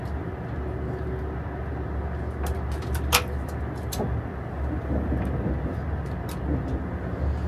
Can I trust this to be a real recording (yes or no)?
yes